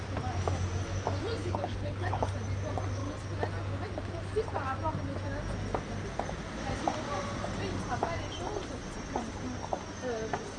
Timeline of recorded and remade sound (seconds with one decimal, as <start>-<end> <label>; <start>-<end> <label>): 0.0-1.4 recorded; 1.4-2.3 remade; 2.3-10.6 recorded